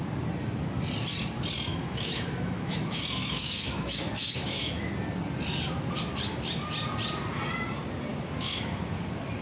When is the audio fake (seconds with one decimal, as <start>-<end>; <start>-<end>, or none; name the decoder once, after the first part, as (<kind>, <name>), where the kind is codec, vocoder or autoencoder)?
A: 1.7-4.9 (autoencoder, DAC-VAE); 8.1-9.0